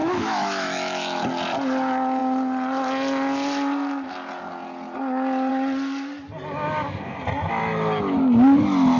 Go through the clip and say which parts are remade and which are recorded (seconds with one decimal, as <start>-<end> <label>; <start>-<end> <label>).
0.0-1.2 remade; 1.2-9.0 recorded